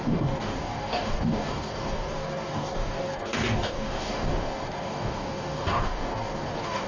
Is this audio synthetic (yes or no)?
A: yes